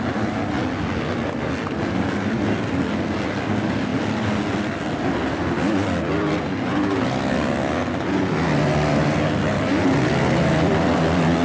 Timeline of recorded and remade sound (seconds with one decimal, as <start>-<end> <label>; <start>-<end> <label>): 0.0-11.4 recorded